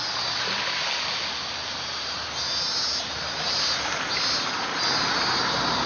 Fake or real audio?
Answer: real